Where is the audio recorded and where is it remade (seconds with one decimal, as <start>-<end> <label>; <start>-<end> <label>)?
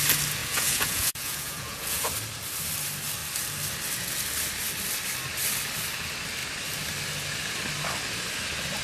0.0-0.4 recorded; 0.4-2.1 remade; 2.1-8.8 recorded